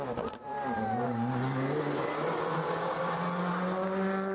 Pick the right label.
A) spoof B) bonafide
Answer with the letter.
B